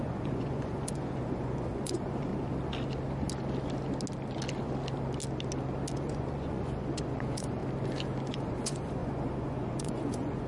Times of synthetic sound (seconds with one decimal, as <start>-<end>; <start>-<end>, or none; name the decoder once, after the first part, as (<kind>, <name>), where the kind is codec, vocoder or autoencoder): 0.0-2.3 (vocoder, Vocos); 5.9-7.6; 8.3-10.5